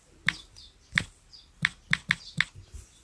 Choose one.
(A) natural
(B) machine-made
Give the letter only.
A